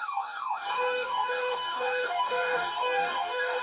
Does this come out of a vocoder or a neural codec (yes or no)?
yes